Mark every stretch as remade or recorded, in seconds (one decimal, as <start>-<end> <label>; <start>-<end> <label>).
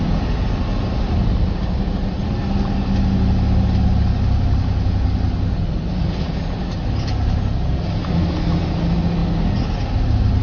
0.0-10.4 recorded